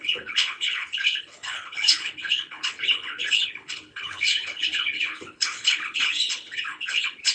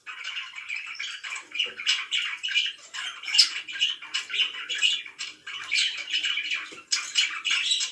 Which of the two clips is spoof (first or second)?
first